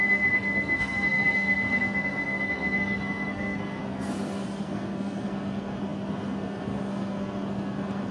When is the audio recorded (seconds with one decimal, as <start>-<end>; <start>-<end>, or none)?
none